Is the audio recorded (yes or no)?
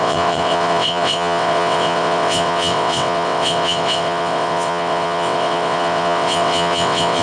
no